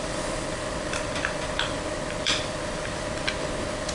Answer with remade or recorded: remade